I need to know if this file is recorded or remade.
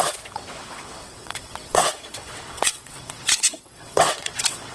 remade